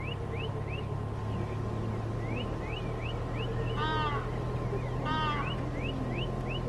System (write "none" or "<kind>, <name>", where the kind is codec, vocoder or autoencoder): none